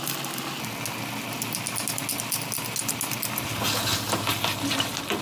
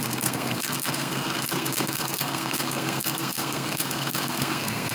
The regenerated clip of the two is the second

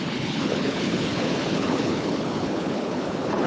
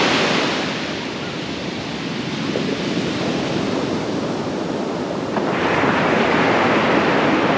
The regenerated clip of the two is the first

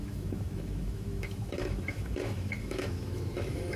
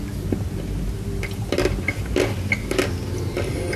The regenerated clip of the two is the first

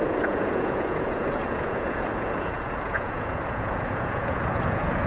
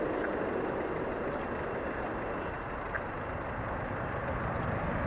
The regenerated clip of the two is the first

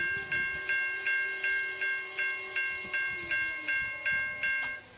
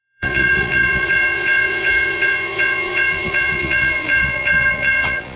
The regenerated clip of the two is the second